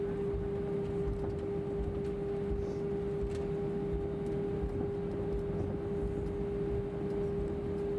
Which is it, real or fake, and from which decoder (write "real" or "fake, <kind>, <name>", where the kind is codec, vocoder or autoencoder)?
real